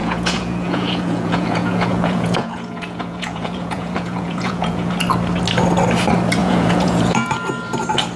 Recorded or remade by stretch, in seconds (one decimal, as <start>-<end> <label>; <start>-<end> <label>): 0.0-4.9 remade; 4.9-6.4 recorded; 6.4-7.3 remade; 7.3-8.2 recorded